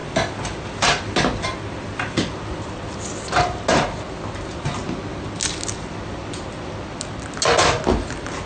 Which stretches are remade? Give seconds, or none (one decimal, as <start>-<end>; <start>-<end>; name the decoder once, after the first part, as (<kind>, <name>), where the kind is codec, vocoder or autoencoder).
none